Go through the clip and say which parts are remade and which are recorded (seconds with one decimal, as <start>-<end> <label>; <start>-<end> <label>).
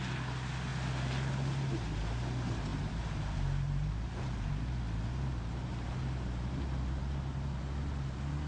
0.0-2.7 recorded; 2.7-4.5 remade; 4.5-7.0 recorded; 7.0-7.7 remade; 7.7-8.5 recorded